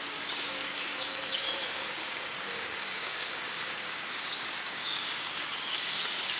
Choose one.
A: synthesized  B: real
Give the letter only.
A